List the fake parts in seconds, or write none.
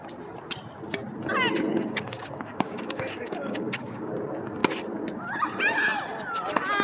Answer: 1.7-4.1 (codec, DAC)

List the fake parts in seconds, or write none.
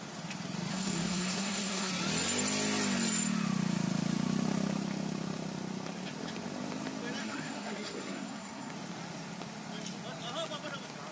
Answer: 0.7-1.9 (codec, SNAC); 7.2-8.7